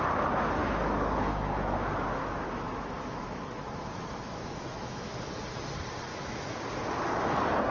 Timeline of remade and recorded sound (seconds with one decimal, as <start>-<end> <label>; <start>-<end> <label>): 0.0-0.6 recorded; 0.6-5.2 remade; 5.2-6.1 recorded; 6.1-6.6 remade; 6.6-7.7 recorded